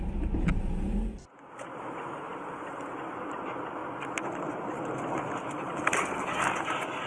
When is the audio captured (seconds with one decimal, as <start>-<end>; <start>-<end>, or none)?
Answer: 0.0-7.1